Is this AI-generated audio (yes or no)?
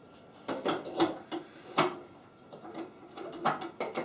no